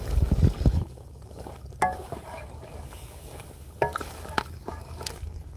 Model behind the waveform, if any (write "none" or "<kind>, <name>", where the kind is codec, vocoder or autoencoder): codec, DAC